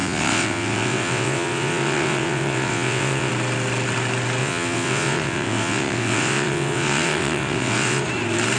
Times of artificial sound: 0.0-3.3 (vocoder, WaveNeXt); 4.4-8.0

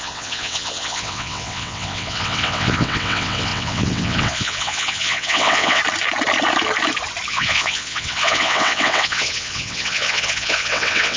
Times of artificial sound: 0.0-5.8 (vocoder, WaveNeXt); 7.3-11.2

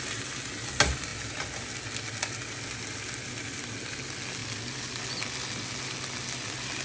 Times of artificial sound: none

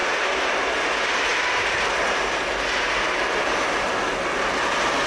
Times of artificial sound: none

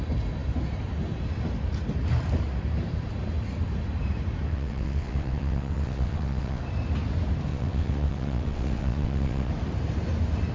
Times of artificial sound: 4.5-6.6 (vocoder, WaveNeXt); 7.5-9.5

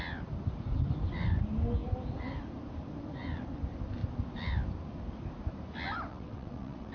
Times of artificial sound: 6.1-6.9 (vocoder, WaveNeXt)